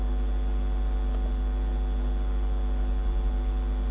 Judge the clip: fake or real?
real